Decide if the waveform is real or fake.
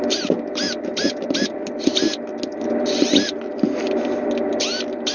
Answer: real